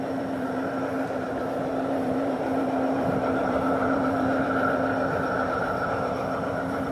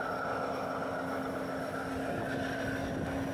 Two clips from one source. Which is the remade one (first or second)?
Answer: first